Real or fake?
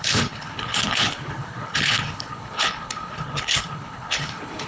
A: fake